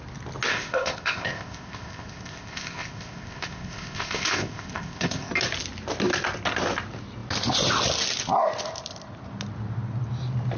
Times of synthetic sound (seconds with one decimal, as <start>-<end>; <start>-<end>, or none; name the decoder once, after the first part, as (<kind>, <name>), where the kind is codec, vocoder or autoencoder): 0.5-5.3 (codec, ZipCodec)